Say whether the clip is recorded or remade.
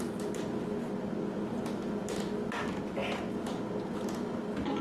recorded